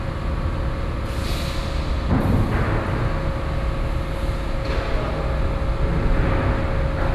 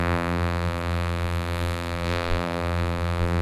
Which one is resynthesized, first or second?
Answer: second